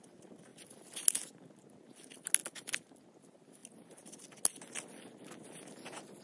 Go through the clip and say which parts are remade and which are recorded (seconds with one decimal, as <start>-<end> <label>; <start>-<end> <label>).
0.0-6.2 recorded